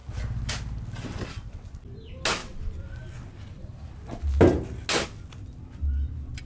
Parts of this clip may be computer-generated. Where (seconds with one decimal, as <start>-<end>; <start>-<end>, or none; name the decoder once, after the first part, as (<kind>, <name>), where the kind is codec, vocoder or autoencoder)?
none